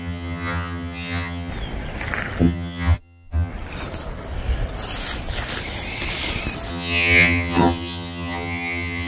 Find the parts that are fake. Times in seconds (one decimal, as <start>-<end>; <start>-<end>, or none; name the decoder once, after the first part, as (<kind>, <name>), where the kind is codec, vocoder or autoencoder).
0.0-1.5 (vocoder, HiFi-GAN); 2.4-3.5; 6.7-9.1